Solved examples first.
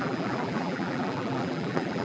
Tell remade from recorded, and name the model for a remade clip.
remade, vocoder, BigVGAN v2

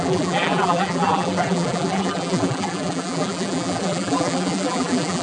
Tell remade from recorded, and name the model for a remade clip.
remade, vocoder, BigVGAN v2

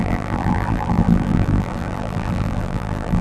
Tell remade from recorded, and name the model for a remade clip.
remade, vocoder, BigVGAN v2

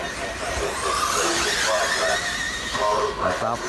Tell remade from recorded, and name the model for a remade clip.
remade, vocoder, BigVGAN v2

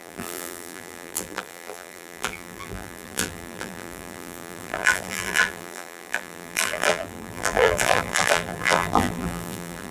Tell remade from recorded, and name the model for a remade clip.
remade, vocoder, BigVGAN v2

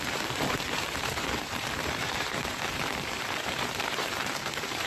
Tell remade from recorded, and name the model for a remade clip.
remade, vocoder, BigVGAN v2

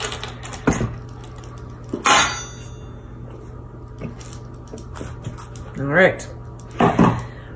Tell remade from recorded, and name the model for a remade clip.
recorded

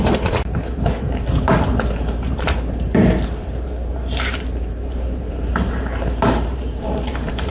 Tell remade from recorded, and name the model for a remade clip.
remade, vocoder, BigVGAN v2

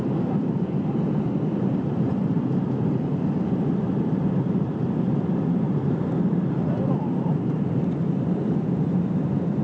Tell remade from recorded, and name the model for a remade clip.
remade, vocoder, BigVGAN v2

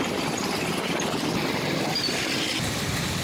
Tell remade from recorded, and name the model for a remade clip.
recorded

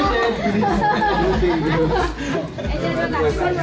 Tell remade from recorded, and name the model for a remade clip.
recorded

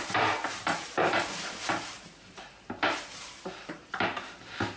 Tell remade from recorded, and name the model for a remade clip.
remade, vocoder, BigVGAN v2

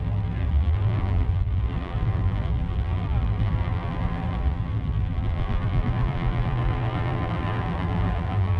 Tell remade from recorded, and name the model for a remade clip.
remade, vocoder, BigVGAN v2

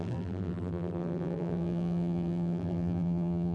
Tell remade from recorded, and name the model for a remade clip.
remade, vocoder, BigVGAN v2